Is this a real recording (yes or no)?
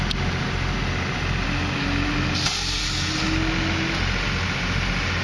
yes